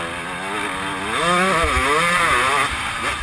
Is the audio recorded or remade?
recorded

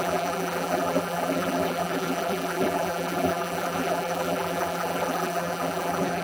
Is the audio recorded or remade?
remade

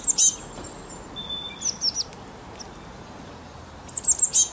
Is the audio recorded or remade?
recorded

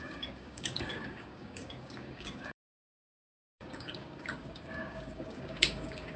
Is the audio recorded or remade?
remade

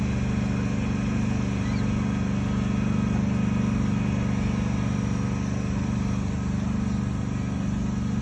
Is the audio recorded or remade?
recorded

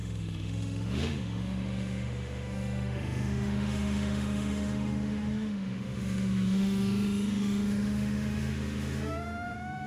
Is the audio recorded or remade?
remade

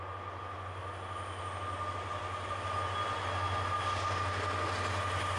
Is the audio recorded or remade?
recorded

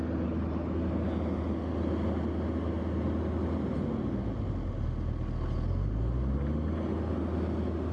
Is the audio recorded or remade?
recorded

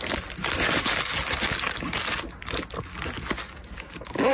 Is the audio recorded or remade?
recorded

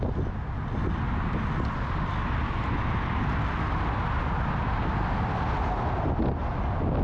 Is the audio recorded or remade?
recorded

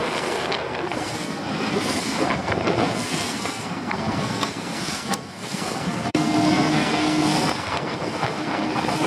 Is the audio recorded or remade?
remade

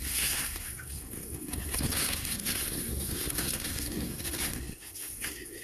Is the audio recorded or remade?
remade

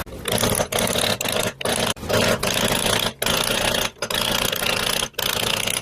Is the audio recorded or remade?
recorded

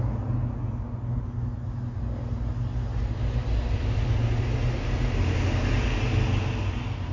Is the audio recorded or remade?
recorded